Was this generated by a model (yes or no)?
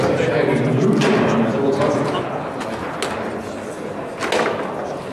no